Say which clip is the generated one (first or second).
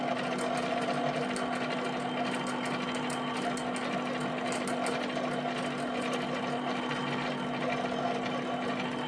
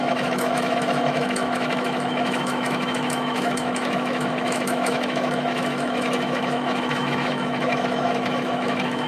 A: second